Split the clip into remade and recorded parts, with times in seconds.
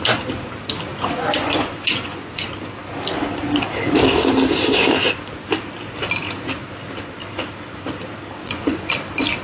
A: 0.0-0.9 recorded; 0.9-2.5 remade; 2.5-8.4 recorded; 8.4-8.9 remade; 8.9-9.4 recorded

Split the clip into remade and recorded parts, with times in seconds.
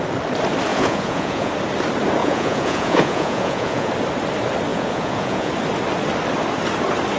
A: 0.0-0.7 recorded; 0.7-1.5 remade; 1.5-2.2 recorded; 2.2-3.9 remade; 3.9-4.7 recorded; 4.7-5.5 remade; 5.5-7.2 recorded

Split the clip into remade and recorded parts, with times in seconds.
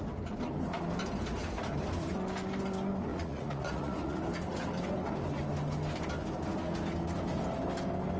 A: 0.0-3.1 recorded; 3.1-4.2 remade; 4.2-8.2 recorded